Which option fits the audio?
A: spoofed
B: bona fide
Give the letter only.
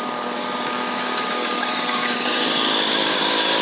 A